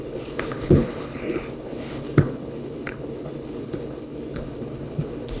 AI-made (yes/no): yes